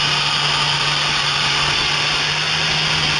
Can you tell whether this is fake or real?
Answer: real